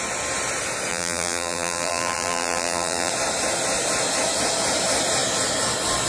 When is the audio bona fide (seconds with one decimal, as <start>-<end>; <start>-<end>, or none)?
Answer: 0.0-0.9; 3.1-6.1